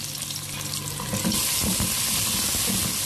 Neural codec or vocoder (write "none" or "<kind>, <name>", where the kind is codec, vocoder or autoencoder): none